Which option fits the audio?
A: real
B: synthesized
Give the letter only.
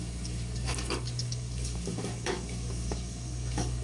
B